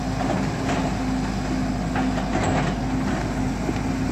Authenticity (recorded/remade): recorded